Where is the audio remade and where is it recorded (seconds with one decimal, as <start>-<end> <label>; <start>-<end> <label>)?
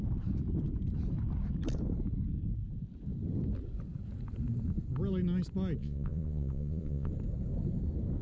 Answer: 0.0-5.8 recorded; 5.8-7.1 remade; 7.1-8.2 recorded